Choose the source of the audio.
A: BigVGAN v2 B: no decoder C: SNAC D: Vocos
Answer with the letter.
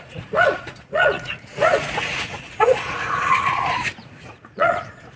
D